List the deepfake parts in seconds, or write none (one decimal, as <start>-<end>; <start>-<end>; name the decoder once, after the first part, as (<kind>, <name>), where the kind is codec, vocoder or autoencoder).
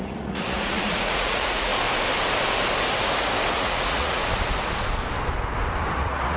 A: 0.0-1.7 (vocoder, Vocos); 3.5-4.2; 5.9-6.4